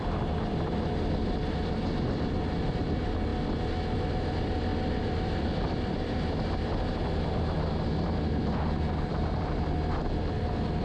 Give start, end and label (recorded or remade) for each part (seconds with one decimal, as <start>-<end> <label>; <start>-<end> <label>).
0.0-3.3 remade; 3.3-4.3 recorded; 4.3-10.8 remade